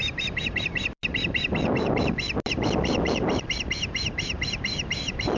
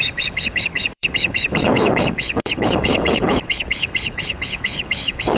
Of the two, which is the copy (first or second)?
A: second